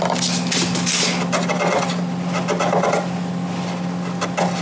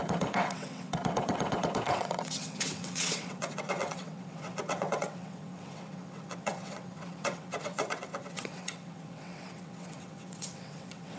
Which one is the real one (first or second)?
first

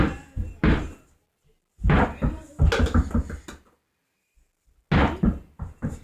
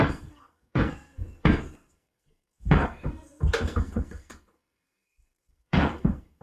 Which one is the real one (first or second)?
first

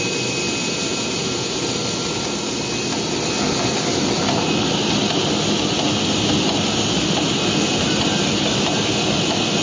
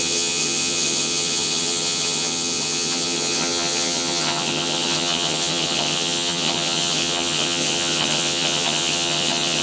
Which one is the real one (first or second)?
first